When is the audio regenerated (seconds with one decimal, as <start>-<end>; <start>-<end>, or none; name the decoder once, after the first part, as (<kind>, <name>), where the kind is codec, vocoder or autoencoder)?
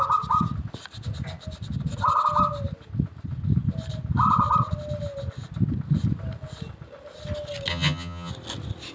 7.7-8.3 (vocoder, HiFi-GAN)